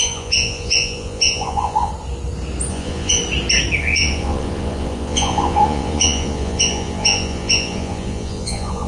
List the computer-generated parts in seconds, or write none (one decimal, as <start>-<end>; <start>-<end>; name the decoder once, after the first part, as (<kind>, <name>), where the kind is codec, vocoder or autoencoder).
0.0-1.9 (vocoder, Vocos); 2.7-3.2; 3.8-8.9